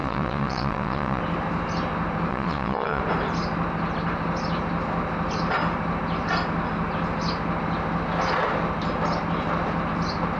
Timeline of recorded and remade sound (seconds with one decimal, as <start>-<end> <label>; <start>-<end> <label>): 0.0-1.2 remade; 1.2-2.3 recorded; 2.3-3.0 remade; 3.0-10.4 recorded